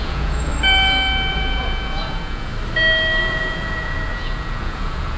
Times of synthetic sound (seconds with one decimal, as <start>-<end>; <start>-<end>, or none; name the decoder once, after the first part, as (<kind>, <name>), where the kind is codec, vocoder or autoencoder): 0.0-0.5 (vocoder, Vocos); 1.3-2.5; 3.2-5.2